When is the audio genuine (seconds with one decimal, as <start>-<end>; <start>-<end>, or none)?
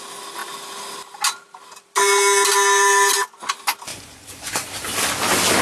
0.0-3.9; 4.7-5.6